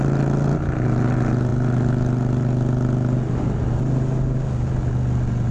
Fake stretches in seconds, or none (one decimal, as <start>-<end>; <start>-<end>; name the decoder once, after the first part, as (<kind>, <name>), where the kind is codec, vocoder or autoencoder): none